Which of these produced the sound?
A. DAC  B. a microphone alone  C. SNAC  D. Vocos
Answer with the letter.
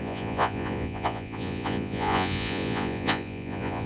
D